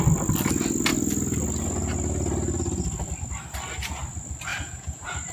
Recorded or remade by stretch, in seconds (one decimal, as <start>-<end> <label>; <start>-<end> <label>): 0.0-4.5 recorded; 4.5-5.3 remade